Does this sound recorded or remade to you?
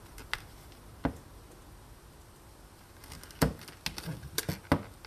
recorded